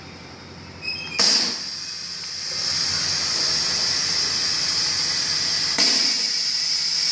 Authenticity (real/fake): real